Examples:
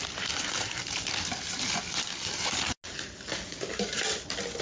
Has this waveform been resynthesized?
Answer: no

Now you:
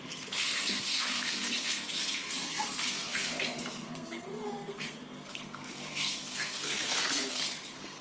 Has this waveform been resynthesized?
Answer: yes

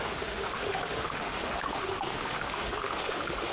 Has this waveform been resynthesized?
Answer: yes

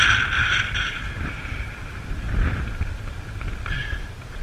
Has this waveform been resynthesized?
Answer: no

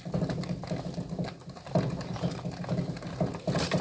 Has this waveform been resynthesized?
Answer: no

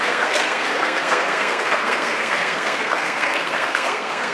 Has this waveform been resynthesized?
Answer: yes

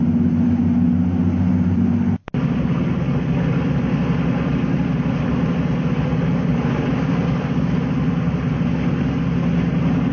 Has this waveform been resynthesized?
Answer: no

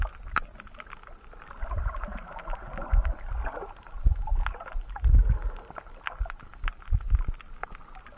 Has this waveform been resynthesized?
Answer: no